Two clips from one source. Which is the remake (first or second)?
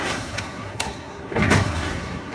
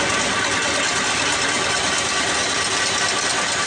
first